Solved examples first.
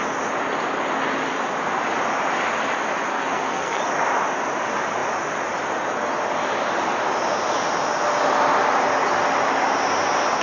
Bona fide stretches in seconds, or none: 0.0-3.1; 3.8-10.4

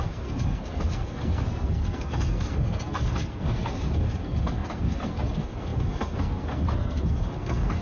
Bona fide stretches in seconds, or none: none

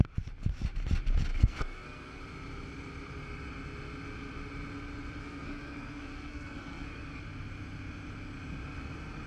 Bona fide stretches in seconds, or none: 0.0-1.3; 2.2-5.2; 7.2-9.3

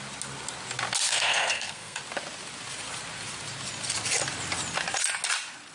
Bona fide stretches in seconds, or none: 0.0-1.1; 2.0-5.7

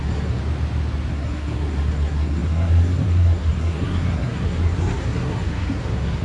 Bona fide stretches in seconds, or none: 0.4-1.1

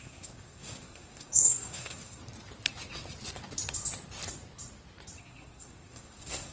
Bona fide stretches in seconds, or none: 2.2-5.2

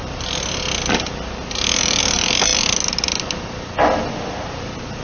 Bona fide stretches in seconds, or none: 0.0-5.0